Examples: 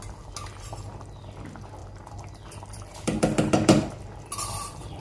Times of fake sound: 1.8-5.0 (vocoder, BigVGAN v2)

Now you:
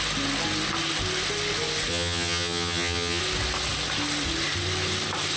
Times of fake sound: 1.9-3.2 (vocoder, HiFi-GAN)

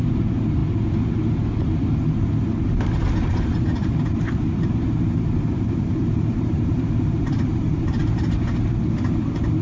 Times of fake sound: 0.0-0.6 (vocoder, BigVGAN v2); 3.4-9.6

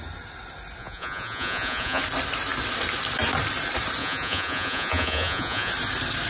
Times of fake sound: 0.8-2.0 (vocoder, Vocos); 4.0-5.7

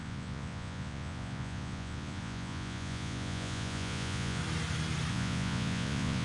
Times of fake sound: 0.0-4.4 (vocoder, Vocos); 5.1-6.2